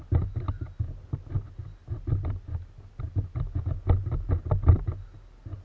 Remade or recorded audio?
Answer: recorded